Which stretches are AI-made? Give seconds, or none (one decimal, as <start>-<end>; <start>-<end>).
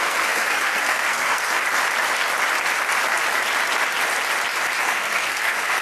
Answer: 0.0-1.5; 4.8-5.8